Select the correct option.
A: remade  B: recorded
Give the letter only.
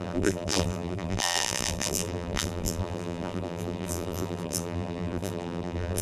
A